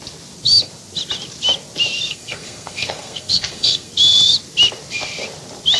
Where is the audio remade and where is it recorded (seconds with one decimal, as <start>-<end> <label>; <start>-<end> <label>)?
0.0-2.1 recorded; 2.1-3.9 remade; 3.9-5.8 recorded